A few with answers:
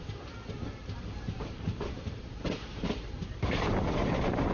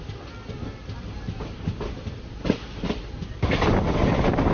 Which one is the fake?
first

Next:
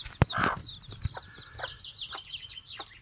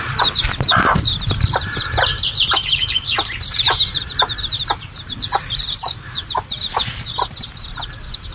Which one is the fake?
second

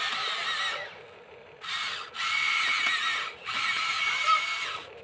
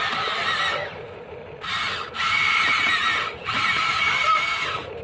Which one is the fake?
second